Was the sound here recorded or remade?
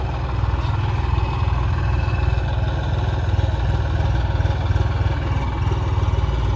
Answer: recorded